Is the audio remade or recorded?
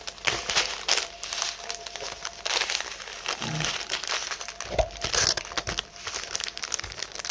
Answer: recorded